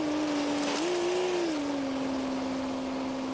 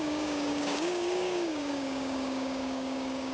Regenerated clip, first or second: second